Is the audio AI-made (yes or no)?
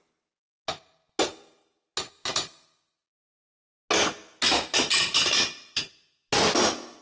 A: no